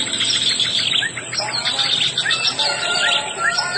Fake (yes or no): no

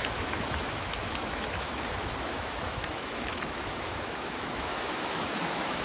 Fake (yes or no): yes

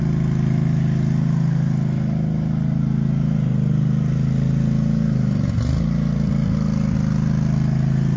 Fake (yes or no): no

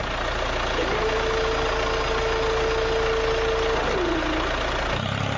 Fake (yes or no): no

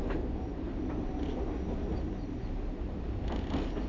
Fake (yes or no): no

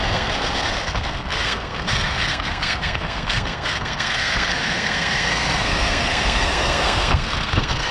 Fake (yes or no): yes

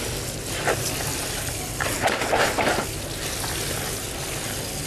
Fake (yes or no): no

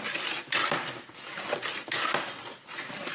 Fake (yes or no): no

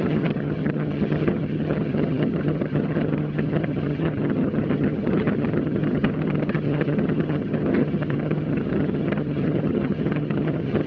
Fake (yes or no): yes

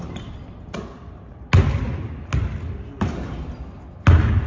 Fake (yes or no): no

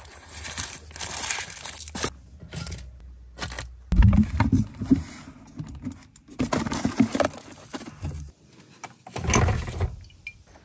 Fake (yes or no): no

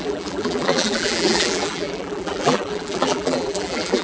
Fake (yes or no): yes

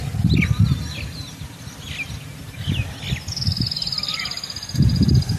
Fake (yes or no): no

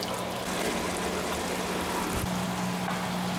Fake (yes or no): no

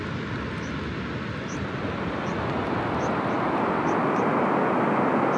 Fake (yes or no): no